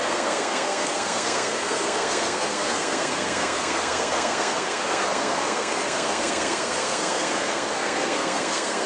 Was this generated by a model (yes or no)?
yes